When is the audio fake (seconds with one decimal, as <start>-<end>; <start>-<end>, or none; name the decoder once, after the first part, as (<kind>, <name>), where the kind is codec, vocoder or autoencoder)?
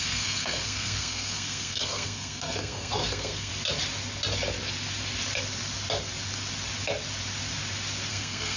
0.0-3.5 (codec, SNAC); 8.1-8.6